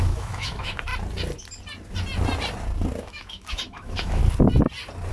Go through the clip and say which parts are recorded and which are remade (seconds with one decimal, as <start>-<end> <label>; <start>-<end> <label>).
0.0-0.9 remade; 0.9-3.0 recorded; 3.0-4.2 remade; 4.2-5.1 recorded